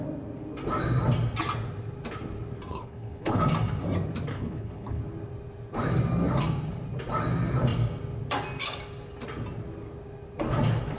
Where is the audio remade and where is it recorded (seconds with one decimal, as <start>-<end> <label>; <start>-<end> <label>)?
0.0-2.7 recorded; 2.7-3.4 remade; 3.4-4.3 recorded; 4.3-5.0 remade; 5.0-11.0 recorded